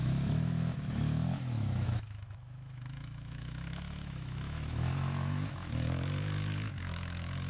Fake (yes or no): yes